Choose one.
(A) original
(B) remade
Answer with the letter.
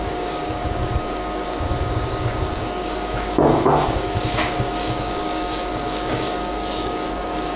B